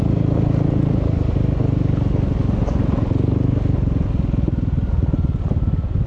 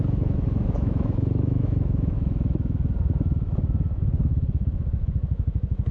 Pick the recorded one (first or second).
first